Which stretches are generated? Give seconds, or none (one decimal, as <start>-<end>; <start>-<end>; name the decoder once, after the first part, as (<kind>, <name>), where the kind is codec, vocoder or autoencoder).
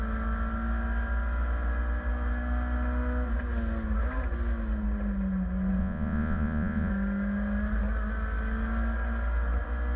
5.8-6.9 (vocoder, Vocos)